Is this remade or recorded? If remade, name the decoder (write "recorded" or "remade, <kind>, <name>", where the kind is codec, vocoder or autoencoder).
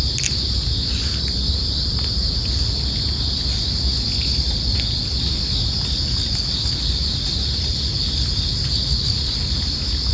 recorded